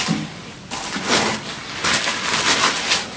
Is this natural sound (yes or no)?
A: yes